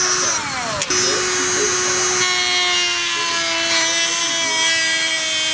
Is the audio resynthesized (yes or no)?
no